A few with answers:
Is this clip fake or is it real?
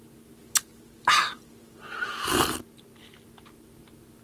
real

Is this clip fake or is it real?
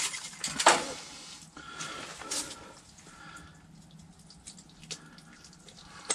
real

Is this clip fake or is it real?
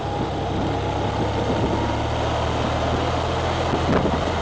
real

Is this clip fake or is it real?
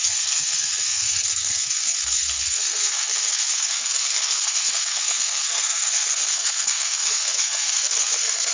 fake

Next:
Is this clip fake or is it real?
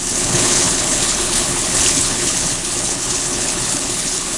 fake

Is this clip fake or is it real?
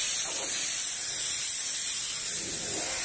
real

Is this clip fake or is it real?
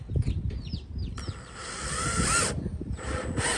real